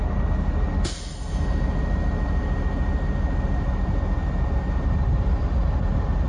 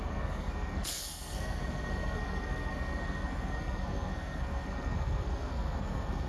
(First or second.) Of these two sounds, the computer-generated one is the second